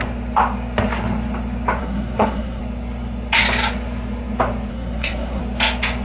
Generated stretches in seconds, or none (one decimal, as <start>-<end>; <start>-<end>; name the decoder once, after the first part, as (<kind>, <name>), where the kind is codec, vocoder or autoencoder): 1.8-2.6 (codec, SNAC); 4.7-5.4